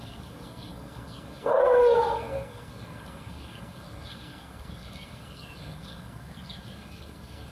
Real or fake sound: fake